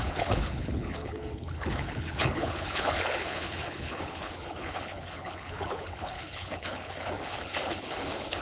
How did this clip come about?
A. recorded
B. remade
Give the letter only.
B